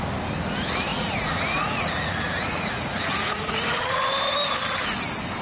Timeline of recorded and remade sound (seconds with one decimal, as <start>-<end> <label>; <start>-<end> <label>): 0.0-0.9 recorded; 0.9-4.1 remade; 4.1-5.4 recorded